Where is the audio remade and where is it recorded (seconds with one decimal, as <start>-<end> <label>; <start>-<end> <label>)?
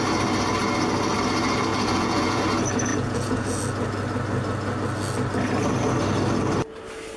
0.0-1.7 recorded; 1.7-2.4 remade; 2.4-2.9 recorded; 2.9-3.6 remade; 3.6-7.2 recorded